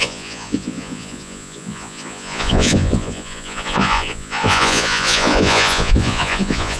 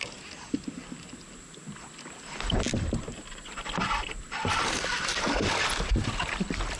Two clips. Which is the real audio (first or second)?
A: second